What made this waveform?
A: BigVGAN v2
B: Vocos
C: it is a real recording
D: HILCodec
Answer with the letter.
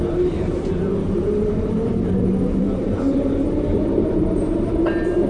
A